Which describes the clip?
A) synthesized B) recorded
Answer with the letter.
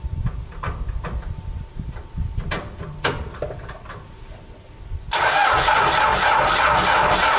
B